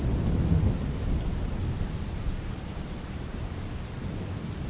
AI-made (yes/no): no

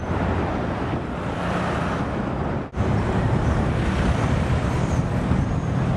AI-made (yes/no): yes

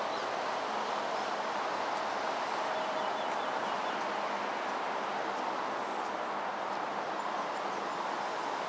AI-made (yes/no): no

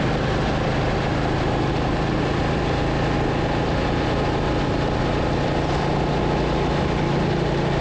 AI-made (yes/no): no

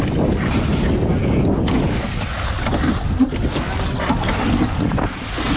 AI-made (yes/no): no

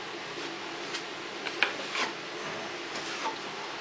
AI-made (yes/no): no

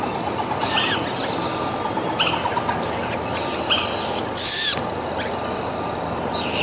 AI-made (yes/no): no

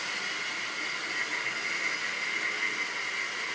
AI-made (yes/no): no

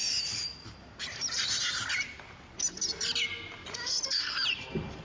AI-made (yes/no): no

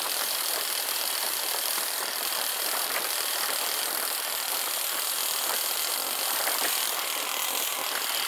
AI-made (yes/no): yes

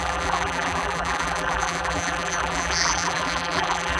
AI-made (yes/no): yes